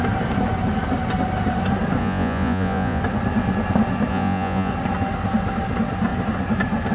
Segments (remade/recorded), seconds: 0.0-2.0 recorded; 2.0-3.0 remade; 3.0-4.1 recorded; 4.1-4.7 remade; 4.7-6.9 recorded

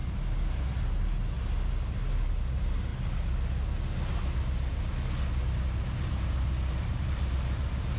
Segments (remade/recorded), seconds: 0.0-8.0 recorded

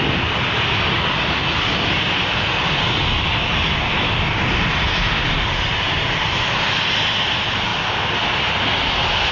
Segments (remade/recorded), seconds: 0.0-9.3 recorded

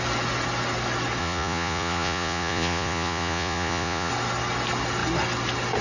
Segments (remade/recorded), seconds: 0.0-1.2 recorded; 1.2-4.1 remade; 4.1-5.8 recorded

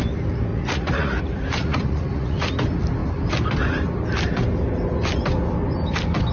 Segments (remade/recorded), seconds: 0.0-0.5 recorded; 0.5-1.2 remade; 1.2-1.6 recorded; 1.6-2.5 remade; 2.5-6.3 recorded

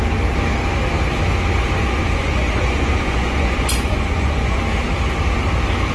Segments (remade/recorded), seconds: 0.0-1.8 recorded; 1.8-4.6 remade; 4.6-5.9 recorded

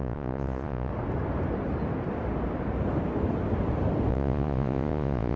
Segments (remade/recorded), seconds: 0.0-0.9 remade; 0.9-4.1 recorded; 4.1-5.4 remade

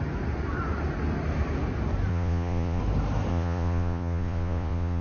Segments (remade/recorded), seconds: 0.0-2.1 recorded; 2.1-2.8 remade; 2.8-3.3 recorded; 3.3-5.0 remade